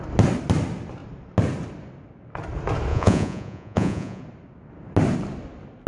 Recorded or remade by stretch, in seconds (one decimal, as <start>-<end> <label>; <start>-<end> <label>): 0.0-2.9 recorded; 2.9-4.2 remade; 4.2-5.9 recorded

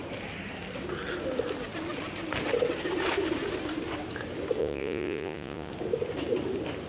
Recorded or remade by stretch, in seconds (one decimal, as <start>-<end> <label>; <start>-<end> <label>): 0.0-4.6 recorded; 4.6-5.7 remade; 5.7-6.9 recorded